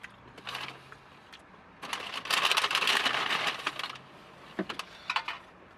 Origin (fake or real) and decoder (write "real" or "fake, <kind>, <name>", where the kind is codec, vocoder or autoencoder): real